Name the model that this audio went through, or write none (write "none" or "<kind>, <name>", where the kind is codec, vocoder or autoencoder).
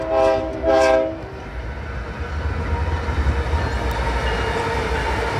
none